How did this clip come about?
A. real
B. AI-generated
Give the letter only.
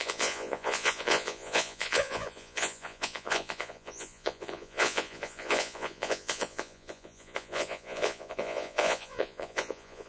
B